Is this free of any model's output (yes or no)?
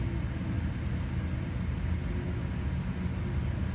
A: yes